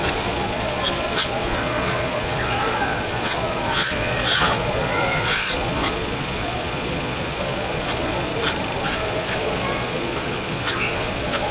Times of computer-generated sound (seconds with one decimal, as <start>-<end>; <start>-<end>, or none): 0.0-8.3; 8.8-11.5